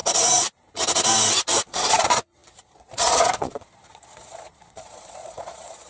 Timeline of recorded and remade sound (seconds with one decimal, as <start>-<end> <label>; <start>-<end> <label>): 0.0-1.6 recorded; 1.6-5.9 remade